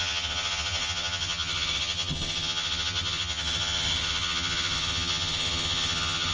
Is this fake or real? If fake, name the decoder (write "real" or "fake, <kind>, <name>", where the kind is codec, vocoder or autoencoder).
fake, vocoder, HiFi-GAN